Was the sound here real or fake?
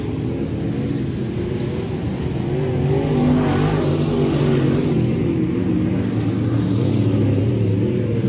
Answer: real